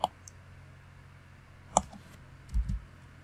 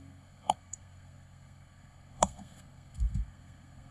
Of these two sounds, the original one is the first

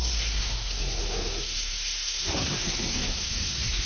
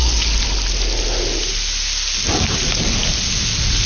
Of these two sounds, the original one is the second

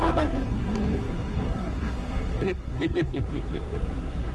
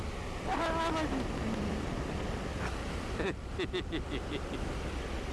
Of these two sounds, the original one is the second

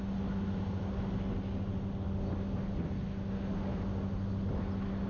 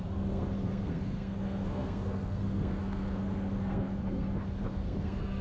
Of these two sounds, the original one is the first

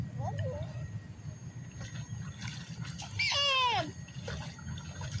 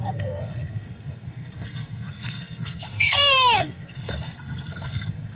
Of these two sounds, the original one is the first